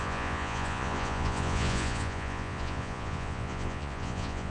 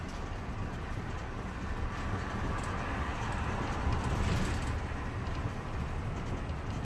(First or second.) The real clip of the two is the second